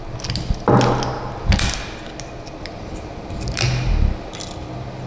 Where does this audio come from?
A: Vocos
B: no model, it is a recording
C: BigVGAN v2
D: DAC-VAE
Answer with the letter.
B